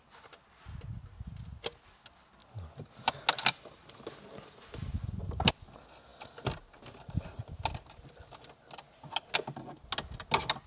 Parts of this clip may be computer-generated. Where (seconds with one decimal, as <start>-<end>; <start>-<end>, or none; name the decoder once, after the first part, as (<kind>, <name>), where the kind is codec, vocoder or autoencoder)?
none